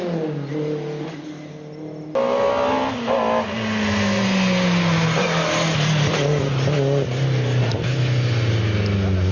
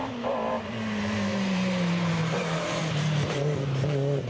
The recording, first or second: first